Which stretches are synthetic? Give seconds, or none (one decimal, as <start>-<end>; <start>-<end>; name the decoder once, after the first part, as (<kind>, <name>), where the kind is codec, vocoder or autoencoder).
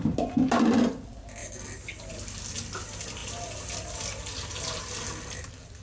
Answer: none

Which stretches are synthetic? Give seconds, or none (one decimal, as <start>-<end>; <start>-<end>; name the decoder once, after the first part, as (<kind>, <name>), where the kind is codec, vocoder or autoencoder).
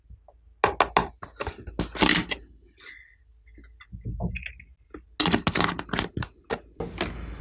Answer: none